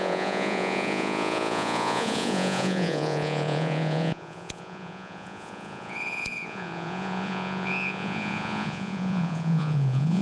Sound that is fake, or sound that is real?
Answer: fake